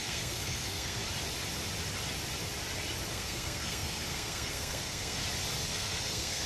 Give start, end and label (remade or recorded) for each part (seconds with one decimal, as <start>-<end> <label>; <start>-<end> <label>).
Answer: 0.0-1.0 remade; 1.0-3.1 recorded; 3.1-5.2 remade; 5.2-5.7 recorded; 5.7-6.5 remade